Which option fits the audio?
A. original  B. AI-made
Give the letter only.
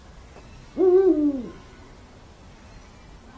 A